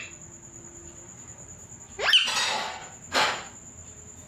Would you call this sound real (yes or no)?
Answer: yes